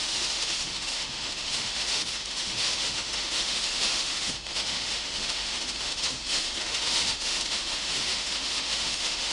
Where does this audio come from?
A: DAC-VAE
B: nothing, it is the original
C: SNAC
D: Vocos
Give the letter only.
A